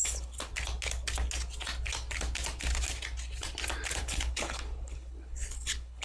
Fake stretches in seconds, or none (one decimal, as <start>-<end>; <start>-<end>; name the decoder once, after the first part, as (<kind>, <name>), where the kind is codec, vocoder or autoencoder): 0.0-0.5 (codec, HILCodec); 4.0-6.0